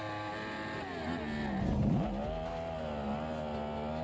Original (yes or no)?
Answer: yes